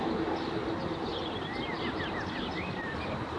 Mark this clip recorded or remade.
recorded